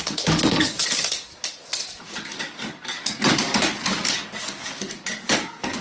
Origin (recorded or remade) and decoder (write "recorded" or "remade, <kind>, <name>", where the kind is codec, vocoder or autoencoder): remade, codec, DAC